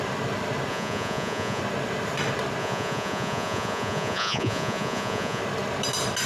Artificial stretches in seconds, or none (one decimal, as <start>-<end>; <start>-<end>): 0.7-1.6; 2.6-5.4